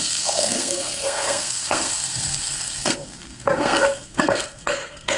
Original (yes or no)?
no